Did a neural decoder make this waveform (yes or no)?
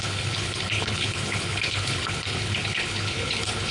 yes